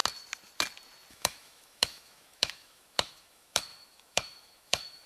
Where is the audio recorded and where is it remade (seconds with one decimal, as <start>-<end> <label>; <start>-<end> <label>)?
0.0-1.1 recorded; 1.1-5.1 remade